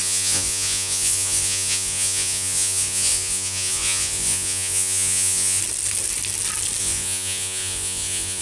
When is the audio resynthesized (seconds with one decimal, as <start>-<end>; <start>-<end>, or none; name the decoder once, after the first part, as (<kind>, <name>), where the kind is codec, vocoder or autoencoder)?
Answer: 0.0-5.6 (vocoder, Vocos); 6.8-8.4